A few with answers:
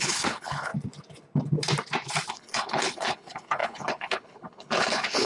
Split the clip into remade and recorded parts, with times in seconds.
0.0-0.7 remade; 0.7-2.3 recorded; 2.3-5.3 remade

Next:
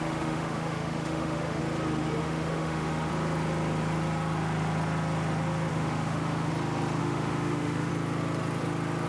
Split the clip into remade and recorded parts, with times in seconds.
0.0-1.6 remade; 1.6-2.2 recorded; 2.2-3.1 remade; 3.1-5.7 recorded; 5.7-6.5 remade; 6.5-7.0 recorded; 7.0-7.9 remade; 7.9-9.1 recorded

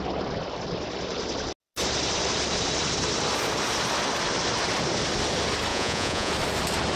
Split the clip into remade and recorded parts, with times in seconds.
0.0-5.7 recorded; 5.7-6.3 remade; 6.3-7.0 recorded

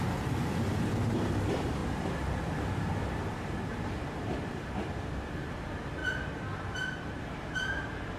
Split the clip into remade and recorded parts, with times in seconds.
0.0-8.2 remade

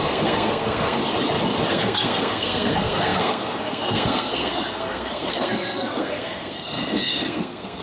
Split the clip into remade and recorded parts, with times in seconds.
0.0-1.0 remade; 1.0-1.7 recorded; 1.7-7.8 remade

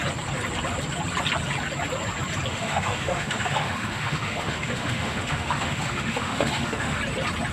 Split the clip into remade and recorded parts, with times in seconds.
0.0-2.5 recorded; 2.5-7.0 remade; 7.0-7.5 recorded

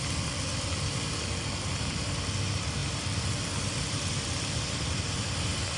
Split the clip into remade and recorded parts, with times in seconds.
0.0-5.8 recorded

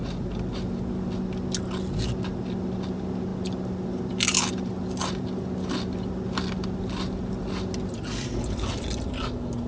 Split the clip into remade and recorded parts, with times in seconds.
0.0-9.7 recorded